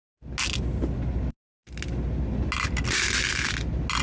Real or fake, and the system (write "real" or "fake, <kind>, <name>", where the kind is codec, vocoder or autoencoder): real